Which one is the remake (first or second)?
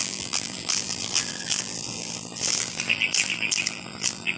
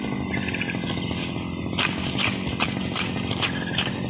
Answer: first